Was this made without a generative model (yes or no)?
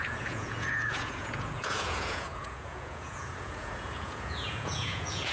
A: no